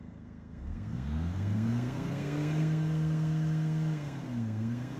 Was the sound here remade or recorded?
remade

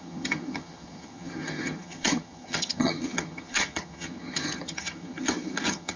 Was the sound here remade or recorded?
remade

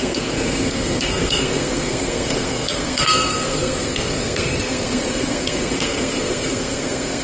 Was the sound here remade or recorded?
remade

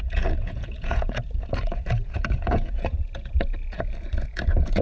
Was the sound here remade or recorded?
remade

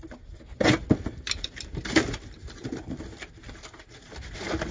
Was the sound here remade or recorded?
recorded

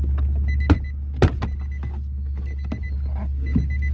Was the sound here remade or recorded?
recorded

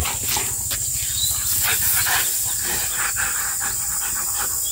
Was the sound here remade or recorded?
recorded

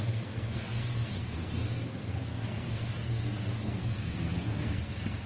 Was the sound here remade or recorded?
remade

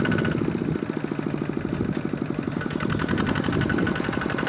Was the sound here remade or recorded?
recorded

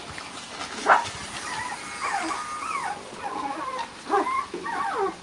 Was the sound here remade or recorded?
recorded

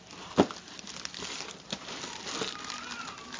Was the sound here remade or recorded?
recorded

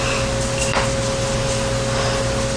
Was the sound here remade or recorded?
recorded